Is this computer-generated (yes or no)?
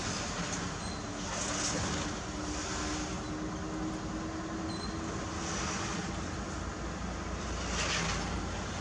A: no